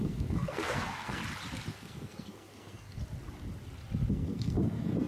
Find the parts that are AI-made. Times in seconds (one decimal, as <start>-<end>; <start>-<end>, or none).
0.0-1.2; 1.7-3.0; 4.1-5.1